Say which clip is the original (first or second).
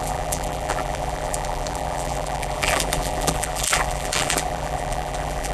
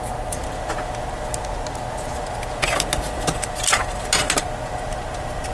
second